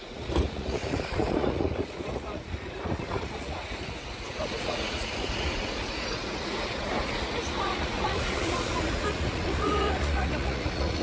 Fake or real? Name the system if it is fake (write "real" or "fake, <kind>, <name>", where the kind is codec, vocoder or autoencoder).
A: fake, vocoder, Vocos